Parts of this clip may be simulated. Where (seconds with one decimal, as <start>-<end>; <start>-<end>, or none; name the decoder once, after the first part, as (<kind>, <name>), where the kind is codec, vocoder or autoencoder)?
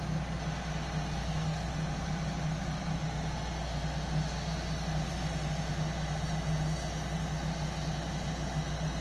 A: 1.2-1.7 (codec, SNAC)